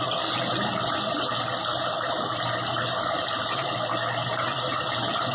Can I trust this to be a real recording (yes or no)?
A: yes